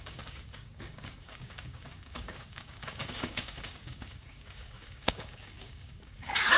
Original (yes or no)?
no